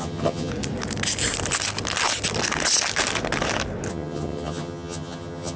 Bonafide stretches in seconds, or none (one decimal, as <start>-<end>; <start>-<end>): 0.5-3.9